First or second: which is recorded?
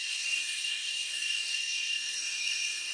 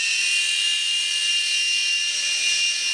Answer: second